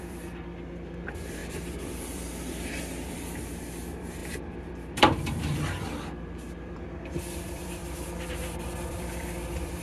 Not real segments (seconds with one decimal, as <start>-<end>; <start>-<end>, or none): 0.0-7.8; 8.9-9.8